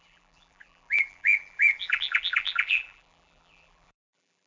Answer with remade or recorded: remade